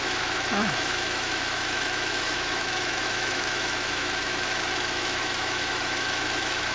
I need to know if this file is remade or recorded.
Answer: remade